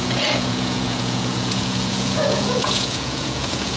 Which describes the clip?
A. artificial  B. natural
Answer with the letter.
A